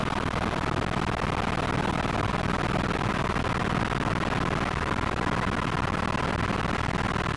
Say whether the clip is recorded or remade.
recorded